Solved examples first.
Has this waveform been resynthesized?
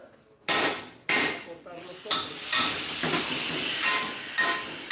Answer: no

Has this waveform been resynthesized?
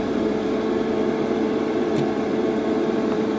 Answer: yes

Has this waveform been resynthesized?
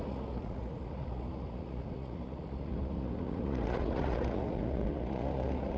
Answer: yes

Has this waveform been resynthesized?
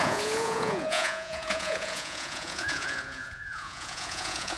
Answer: yes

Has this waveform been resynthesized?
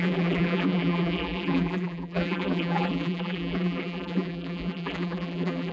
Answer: yes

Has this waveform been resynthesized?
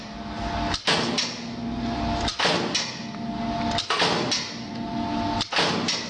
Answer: no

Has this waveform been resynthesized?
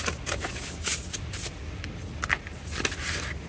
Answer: no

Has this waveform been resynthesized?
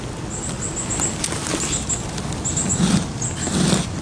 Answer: no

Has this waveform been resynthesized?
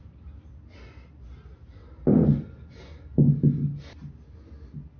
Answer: no